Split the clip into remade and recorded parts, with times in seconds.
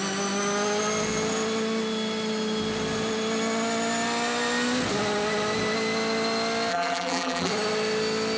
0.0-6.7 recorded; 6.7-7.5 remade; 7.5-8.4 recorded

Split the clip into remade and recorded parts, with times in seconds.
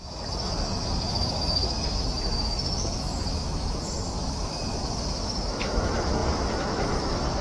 0.0-7.4 remade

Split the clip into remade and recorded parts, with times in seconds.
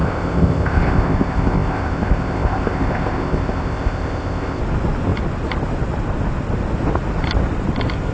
0.0-4.6 remade; 4.6-8.1 recorded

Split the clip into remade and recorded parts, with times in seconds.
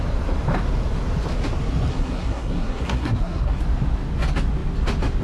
0.0-1.9 recorded; 1.9-3.6 remade; 3.6-5.2 recorded